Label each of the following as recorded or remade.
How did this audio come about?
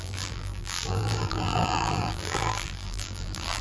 remade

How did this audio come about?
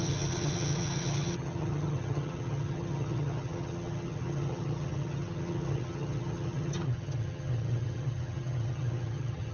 remade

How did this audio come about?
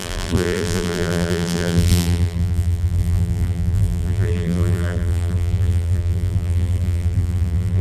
remade